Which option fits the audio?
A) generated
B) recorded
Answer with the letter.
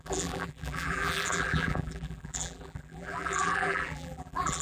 A